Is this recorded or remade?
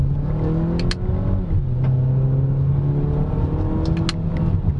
recorded